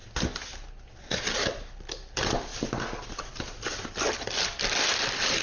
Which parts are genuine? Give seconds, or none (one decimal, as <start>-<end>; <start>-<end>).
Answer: 0.0-5.4